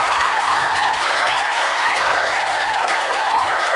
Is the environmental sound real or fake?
fake